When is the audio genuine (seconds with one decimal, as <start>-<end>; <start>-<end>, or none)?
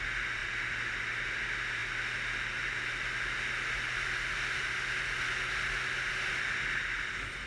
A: 0.0-7.5